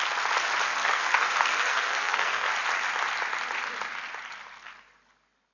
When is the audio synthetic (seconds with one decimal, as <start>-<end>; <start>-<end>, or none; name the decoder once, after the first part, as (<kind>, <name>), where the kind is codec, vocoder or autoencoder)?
0.8-2.5 (codec, SNAC)